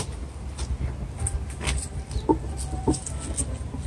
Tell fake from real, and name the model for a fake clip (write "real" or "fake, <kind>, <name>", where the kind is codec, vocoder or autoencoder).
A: real